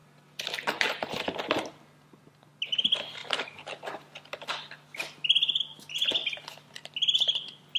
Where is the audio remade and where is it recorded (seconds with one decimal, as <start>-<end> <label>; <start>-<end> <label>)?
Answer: 0.0-7.8 recorded